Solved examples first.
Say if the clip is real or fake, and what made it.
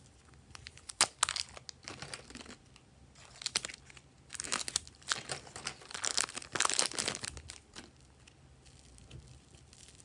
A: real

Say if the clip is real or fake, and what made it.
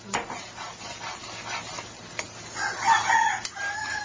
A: real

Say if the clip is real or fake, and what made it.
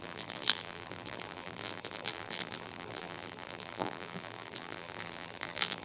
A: fake, vocoder, BigVGAN v2